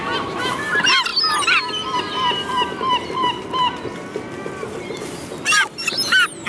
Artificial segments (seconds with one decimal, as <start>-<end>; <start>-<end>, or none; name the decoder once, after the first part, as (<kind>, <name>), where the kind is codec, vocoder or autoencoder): 1.1-5.0 (vocoder, BigVGAN v2)